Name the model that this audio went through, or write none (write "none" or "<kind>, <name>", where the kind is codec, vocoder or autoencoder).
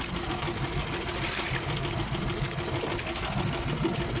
none